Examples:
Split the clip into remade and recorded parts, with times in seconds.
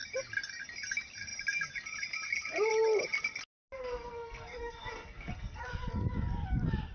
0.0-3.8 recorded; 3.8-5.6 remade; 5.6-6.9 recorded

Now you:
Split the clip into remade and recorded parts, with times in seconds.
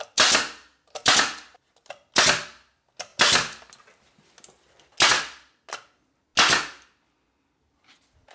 0.0-8.3 recorded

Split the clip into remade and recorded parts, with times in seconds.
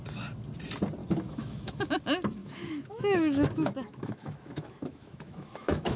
0.0-1.0 recorded; 1.0-1.9 remade; 1.9-2.4 recorded; 2.4-6.0 remade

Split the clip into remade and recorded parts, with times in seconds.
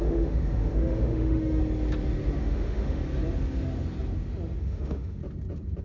0.0-1.6 remade; 1.6-2.4 recorded; 2.4-3.0 remade; 3.0-4.6 recorded; 4.6-5.2 remade; 5.2-5.8 recorded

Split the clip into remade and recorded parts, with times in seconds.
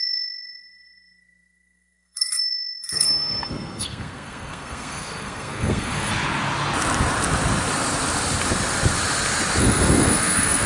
0.0-6.1 remade; 6.1-9.6 recorded; 9.6-10.7 remade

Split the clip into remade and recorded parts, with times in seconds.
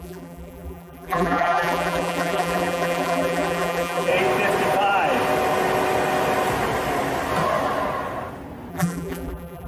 0.0-4.1 remade; 4.1-8.7 recorded; 8.7-9.7 remade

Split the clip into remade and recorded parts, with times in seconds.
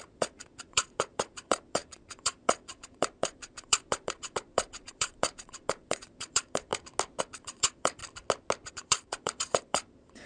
0.0-6.7 remade; 6.7-7.2 recorded; 7.2-8.0 remade; 8.0-8.7 recorded; 8.7-10.3 remade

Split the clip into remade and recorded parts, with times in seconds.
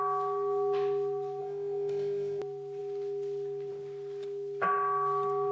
0.0-1.4 recorded; 1.4-2.4 remade; 2.4-5.5 recorded